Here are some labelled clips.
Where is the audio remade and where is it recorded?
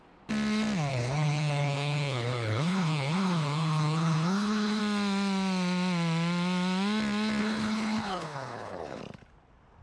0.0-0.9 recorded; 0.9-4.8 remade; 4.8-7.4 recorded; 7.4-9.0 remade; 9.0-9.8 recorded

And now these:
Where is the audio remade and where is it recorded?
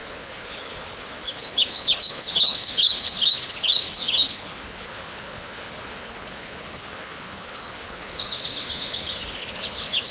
0.0-10.1 remade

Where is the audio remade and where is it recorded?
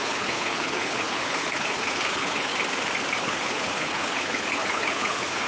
0.0-2.5 remade; 2.5-3.2 recorded; 3.2-5.5 remade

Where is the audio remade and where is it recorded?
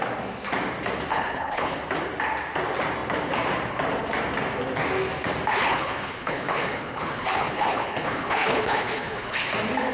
0.0-1.1 recorded; 1.1-1.8 remade; 1.8-5.5 recorded; 5.5-9.5 remade; 9.5-9.9 recorded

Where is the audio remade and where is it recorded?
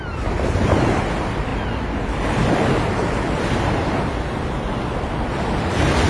0.0-6.1 recorded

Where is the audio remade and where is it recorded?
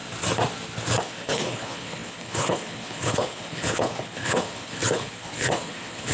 0.0-1.0 recorded; 1.0-6.1 remade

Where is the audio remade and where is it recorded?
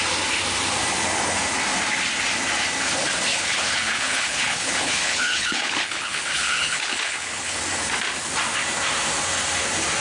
0.0-3.3 recorded; 3.3-7.6 remade; 7.6-10.0 recorded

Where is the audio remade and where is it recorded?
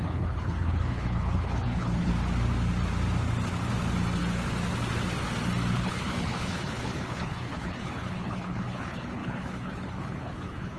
0.0-2.1 remade; 2.1-5.7 recorded; 5.7-10.8 remade